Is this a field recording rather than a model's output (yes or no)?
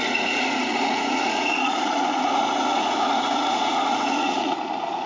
no